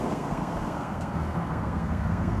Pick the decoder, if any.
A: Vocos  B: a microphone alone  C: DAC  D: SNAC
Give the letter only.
D